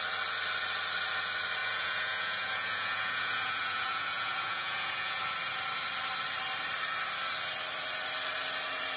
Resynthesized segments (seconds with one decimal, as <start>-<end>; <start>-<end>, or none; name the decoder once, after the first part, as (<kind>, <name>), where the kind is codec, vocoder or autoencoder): 1.6-5.2 (vocoder, Vocos)